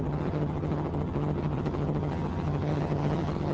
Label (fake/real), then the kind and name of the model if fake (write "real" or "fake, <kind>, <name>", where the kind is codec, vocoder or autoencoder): fake, vocoder, HiFi-GAN